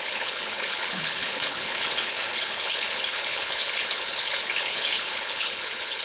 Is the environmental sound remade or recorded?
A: remade